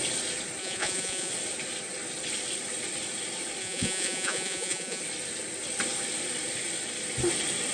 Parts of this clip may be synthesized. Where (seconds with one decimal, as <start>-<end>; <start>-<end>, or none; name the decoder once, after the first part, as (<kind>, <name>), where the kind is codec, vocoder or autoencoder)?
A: 0.6-1.3 (vocoder, Vocos); 3.6-5.0